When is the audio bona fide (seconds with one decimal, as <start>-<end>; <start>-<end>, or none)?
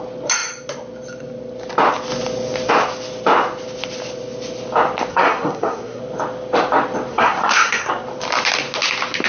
0.0-5.1; 6.0-7.1; 7.9-9.3